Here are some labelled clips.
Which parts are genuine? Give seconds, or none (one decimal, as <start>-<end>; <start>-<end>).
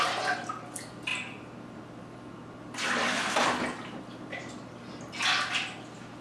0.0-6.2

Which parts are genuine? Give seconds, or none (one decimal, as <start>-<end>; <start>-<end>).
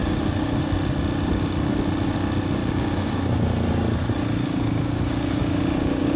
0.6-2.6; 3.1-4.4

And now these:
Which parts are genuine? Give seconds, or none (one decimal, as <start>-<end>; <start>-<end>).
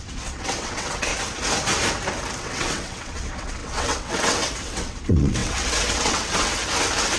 1.1-2.4; 6.6-7.2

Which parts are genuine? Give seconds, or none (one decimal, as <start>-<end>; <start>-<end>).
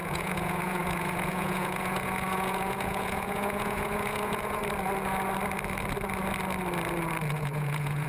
4.6-7.3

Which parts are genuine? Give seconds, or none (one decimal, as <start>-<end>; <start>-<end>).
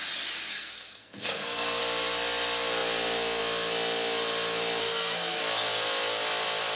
0.0-0.5; 1.8-4.8; 5.4-6.8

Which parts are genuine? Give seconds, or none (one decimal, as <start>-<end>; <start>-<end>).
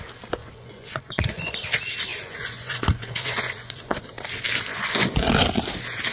0.0-0.4; 1.5-2.1; 4.0-4.7; 5.3-6.1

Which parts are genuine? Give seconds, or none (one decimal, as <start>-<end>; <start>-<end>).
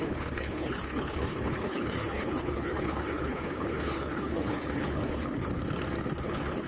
5.5-6.2